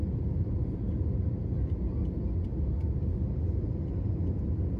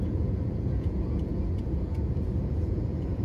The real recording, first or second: first